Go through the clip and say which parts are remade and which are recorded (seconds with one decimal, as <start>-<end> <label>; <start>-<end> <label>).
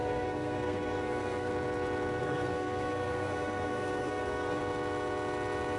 0.0-1.5 remade; 1.5-2.2 recorded; 2.2-4.6 remade; 4.6-5.8 recorded